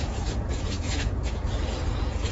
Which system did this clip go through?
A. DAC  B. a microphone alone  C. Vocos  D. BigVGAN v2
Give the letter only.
C